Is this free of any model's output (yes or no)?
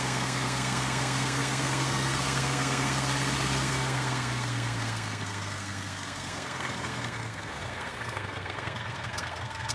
no